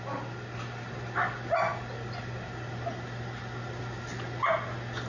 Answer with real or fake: real